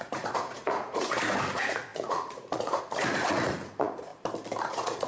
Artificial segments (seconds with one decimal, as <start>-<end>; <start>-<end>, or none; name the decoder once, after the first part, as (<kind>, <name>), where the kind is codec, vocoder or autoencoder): 0.0-4.1 (vocoder, Vocos); 4.6-5.1

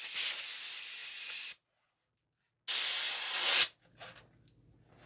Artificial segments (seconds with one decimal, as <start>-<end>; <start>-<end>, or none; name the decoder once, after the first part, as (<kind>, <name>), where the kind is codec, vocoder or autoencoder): none